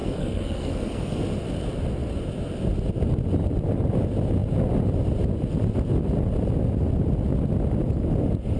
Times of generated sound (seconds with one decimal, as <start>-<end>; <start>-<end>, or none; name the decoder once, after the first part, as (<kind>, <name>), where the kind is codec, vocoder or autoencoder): 0.0-1.2 (codec, SNAC)